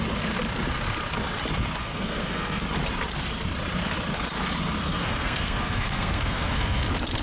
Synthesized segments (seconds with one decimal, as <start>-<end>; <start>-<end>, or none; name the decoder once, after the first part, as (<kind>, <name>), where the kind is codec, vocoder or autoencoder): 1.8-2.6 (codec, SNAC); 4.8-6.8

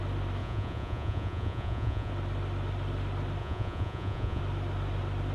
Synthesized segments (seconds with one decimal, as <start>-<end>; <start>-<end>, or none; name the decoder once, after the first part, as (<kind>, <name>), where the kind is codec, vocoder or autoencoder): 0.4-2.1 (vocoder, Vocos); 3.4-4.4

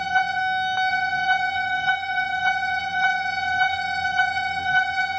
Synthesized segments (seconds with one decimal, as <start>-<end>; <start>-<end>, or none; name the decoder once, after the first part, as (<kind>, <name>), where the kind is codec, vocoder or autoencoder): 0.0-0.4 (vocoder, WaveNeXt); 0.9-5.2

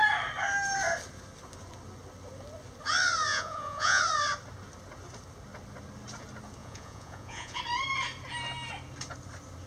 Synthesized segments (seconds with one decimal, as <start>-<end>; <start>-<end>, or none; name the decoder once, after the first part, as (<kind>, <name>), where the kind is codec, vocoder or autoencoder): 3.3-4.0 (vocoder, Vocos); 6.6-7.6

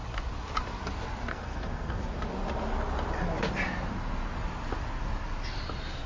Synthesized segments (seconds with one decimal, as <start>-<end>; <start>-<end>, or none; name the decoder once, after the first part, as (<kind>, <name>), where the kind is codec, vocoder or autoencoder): 1.3-2.0 (codec, SNAC)

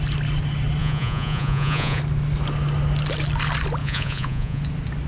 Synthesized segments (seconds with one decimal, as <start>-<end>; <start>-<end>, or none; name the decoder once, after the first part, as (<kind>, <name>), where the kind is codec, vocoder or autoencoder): 0.8-2.0 (vocoder, Vocos); 3.8-4.6